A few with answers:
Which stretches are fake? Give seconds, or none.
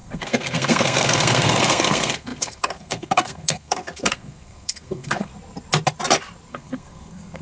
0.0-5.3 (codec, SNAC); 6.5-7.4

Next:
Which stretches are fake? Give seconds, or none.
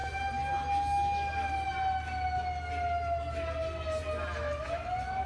none